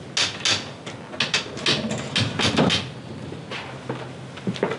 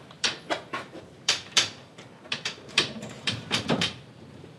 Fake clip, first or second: second